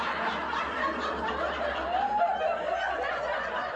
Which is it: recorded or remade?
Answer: recorded